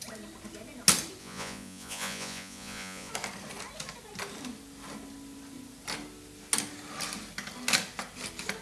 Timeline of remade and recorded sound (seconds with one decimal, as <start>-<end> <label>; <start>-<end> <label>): 0.0-1.2 recorded; 1.2-3.1 remade; 3.1-8.6 recorded